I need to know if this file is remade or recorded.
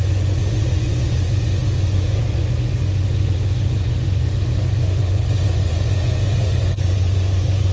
remade